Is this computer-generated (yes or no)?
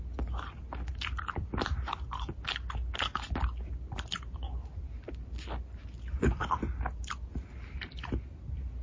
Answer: no